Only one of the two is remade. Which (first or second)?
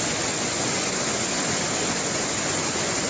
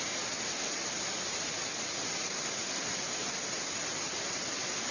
first